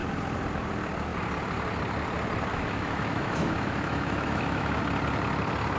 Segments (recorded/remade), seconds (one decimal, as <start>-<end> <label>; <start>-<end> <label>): 0.0-2.5 recorded; 2.5-4.8 remade; 4.8-5.8 recorded